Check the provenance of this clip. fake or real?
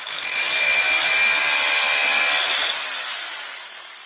real